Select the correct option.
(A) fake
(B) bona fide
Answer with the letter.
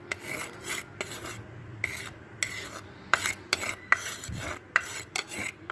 A